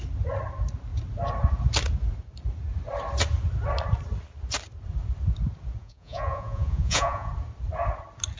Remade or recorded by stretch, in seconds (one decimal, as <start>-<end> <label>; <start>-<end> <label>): 0.0-5.8 recorded; 5.8-7.3 remade; 7.3-8.4 recorded